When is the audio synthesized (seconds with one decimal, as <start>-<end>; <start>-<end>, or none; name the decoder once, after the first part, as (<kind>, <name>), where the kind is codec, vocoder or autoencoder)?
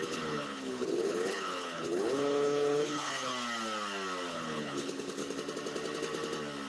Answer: 0.0-3.3 (codec, HILCodec); 4.3-5.2